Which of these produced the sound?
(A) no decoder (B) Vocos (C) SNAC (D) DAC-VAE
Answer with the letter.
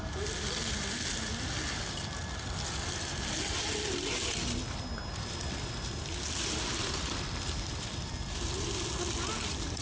A